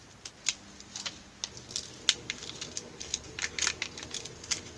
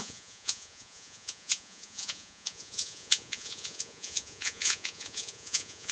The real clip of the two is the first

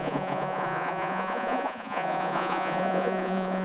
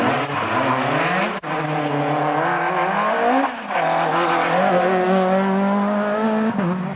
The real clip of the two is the second